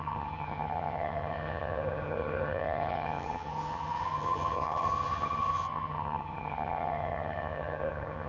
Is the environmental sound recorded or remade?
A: remade